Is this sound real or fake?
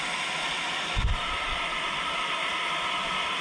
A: real